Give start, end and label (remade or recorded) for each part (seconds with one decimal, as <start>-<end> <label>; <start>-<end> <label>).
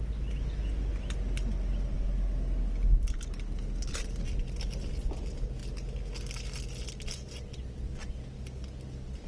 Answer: 0.0-9.3 recorded